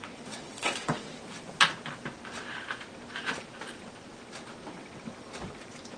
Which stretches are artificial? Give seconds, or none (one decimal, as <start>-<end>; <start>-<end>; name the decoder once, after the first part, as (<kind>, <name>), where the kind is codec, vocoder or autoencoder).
0.0-1.2 (vocoder, WaveNeXt); 4.6-5.1